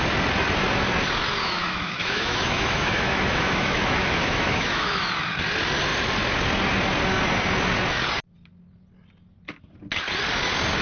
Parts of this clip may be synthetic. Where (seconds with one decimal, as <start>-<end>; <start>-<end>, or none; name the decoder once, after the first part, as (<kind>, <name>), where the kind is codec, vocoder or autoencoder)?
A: 1.4-5.1 (autoencoder, DAC-VAE)